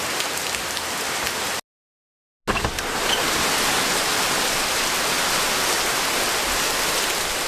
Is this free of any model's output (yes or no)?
yes